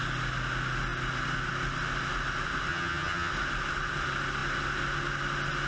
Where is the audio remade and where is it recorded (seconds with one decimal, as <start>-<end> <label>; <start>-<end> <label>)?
0.0-2.7 recorded; 2.7-3.3 remade; 3.3-5.7 recorded